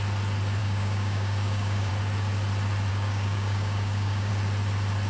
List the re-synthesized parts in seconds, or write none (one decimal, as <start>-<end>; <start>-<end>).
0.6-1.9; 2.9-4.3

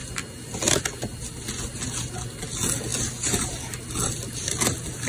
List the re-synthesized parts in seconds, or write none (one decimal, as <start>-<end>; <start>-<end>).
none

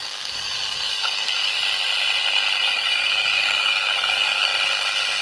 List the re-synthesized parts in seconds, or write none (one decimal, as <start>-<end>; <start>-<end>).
0.0-1.6; 2.5-4.5

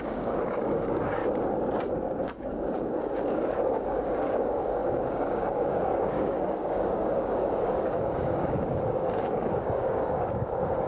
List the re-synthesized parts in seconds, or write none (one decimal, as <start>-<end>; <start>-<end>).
0.0-1.2; 2.1-10.9